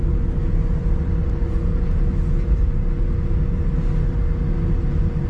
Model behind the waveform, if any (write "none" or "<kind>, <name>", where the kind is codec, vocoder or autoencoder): none